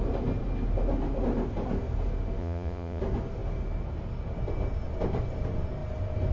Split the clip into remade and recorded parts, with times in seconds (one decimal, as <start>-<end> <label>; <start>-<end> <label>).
0.0-2.4 recorded; 2.4-3.0 remade; 3.0-6.3 recorded